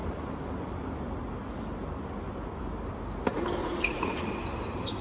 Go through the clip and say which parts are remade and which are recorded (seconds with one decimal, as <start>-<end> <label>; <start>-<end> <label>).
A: 0.0-3.6 recorded; 3.6-4.3 remade; 4.3-5.0 recorded